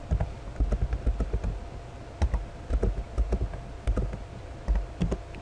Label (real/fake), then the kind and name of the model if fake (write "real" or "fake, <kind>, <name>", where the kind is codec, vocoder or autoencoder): real